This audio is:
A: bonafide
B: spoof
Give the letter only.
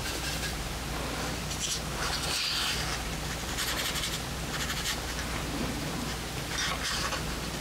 A